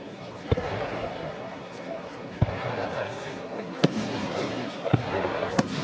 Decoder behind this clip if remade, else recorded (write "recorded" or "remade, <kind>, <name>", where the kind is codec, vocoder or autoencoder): remade, codec, SNAC